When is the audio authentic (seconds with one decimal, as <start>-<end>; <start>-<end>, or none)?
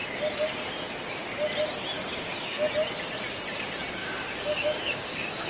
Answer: 0.0-2.0; 2.7-4.0